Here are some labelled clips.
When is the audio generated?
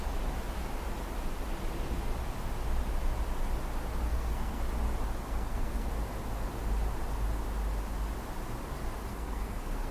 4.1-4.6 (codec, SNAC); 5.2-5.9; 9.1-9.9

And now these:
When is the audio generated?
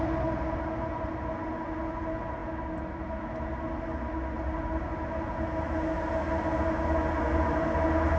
none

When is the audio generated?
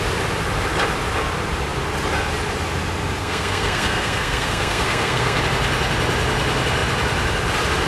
3.2-5.4 (codec, SNAC)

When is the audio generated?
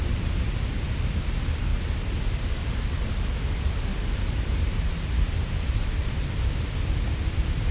1.7-3.0 (vocoder, BigVGAN v2); 3.9-6.4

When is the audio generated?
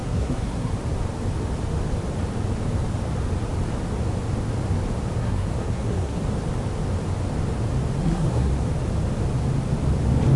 0.0-0.7 (codec, SNAC); 5.2-6.2; 8.0-8.5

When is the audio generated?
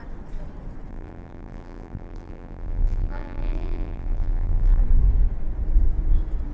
0.9-4.8 (vocoder, BigVGAN v2)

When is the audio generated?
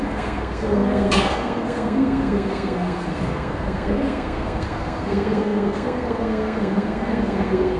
0.0-7.8 (codec, SNAC)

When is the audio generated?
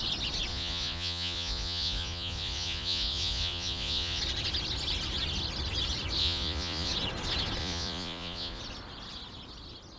0.5-4.2 (vocoder, Vocos); 6.2-6.9; 7.6-8.6